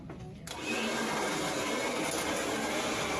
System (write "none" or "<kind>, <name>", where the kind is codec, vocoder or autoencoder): none